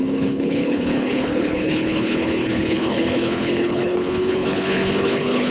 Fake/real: fake